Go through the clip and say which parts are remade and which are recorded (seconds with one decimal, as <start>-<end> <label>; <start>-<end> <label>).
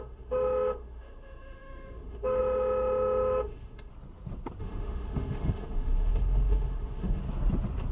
0.0-3.9 remade; 3.9-4.6 recorded; 4.6-7.2 remade; 7.2-7.9 recorded